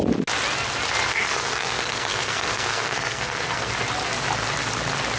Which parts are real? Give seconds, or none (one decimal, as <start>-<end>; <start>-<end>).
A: 0.0-1.1; 3.7-5.2

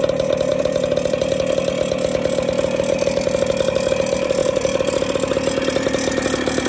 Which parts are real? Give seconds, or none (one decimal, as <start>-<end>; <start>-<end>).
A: 0.0-0.5; 1.6-4.4; 5.0-6.7

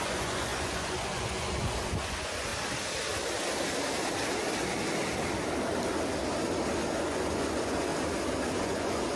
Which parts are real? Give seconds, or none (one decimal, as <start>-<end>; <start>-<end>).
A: 2.5-7.0; 7.9-8.6

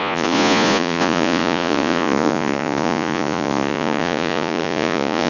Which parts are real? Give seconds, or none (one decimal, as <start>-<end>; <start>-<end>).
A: none